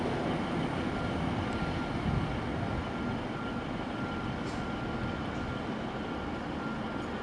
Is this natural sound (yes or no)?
yes